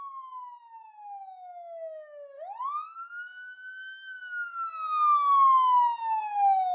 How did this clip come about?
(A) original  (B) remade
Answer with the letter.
A